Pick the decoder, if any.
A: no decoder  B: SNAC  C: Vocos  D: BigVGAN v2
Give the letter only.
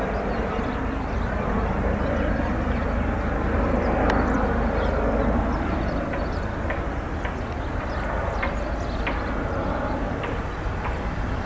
A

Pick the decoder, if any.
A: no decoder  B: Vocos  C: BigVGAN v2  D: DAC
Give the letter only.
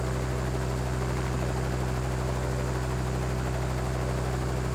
A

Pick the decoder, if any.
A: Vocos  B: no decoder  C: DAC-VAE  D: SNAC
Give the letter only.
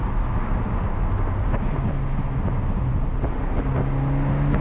B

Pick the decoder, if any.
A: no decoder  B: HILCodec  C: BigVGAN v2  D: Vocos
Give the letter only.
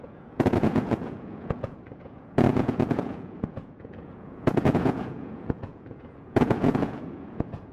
D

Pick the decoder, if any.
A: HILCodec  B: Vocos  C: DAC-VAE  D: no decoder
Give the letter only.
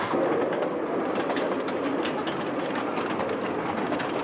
D